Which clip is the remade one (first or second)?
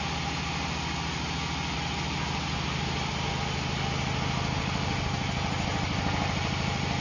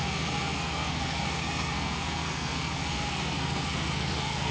second